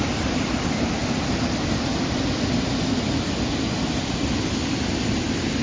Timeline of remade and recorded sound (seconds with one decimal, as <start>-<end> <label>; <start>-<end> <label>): 0.0-5.6 recorded